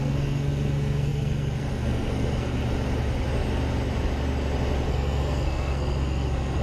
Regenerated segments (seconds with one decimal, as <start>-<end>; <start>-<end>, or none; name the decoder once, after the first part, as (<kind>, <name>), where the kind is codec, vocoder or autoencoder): 0.0-2.6 (codec, SNAC); 4.9-6.6